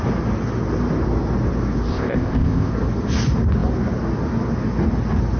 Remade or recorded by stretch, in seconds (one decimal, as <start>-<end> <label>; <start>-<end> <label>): 0.0-1.9 recorded; 1.9-2.7 remade; 2.7-5.4 recorded